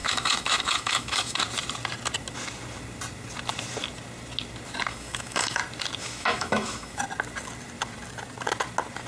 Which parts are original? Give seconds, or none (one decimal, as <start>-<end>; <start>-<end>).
1.4-4.9; 5.6-6.0; 7.0-9.1